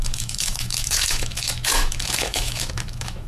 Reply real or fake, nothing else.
fake